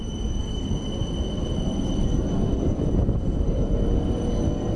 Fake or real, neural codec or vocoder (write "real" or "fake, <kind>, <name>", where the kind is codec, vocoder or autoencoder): real